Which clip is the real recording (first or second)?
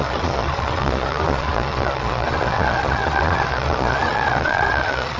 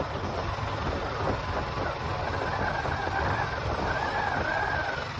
second